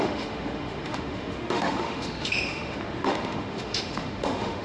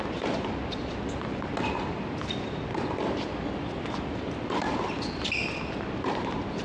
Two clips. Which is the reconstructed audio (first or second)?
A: first